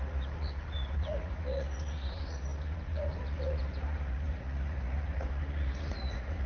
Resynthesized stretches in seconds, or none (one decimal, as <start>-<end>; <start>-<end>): 0.0-6.5